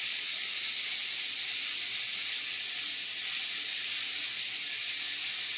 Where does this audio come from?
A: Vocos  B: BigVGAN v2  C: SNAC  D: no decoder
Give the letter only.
D